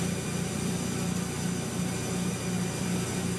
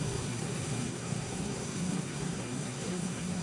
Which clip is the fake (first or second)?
second